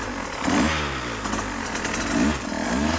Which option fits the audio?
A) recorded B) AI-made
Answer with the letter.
A